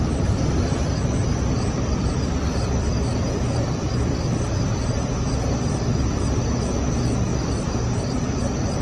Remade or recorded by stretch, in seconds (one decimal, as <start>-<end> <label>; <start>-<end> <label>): 0.0-8.8 recorded

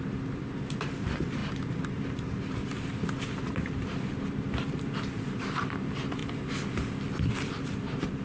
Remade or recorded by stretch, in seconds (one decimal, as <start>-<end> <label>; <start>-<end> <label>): 0.0-6.2 remade; 6.2-7.3 recorded; 7.3-8.2 remade

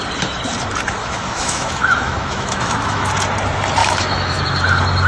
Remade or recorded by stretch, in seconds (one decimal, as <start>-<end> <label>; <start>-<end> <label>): 0.0-1.0 recorded; 1.0-3.1 remade; 3.1-3.8 recorded; 3.8-4.4 remade; 4.4-5.1 recorded

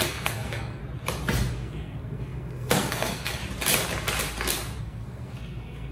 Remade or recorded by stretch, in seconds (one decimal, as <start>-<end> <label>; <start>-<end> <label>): 0.0-0.8 remade; 0.8-1.5 recorded; 1.5-3.4 remade; 3.4-4.8 recorded; 4.8-5.9 remade

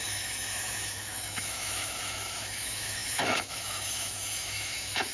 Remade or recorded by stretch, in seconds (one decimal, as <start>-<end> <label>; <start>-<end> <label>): 0.0-5.1 remade

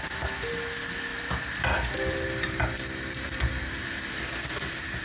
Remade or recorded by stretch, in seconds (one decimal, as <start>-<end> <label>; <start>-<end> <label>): 0.0-1.1 recorded; 1.1-4.1 remade; 4.1-5.0 recorded

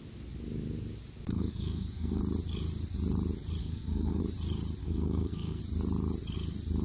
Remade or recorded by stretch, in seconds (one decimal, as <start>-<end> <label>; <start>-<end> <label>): 0.0-1.3 recorded; 1.3-2.2 remade; 2.2-3.6 recorded; 3.6-4.2 remade; 4.2-4.8 recorded; 4.8-5.6 remade; 5.6-6.8 recorded

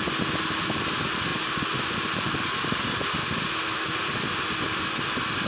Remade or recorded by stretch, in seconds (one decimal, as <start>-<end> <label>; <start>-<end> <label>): 0.0-5.5 recorded